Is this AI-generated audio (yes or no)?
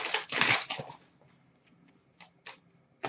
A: no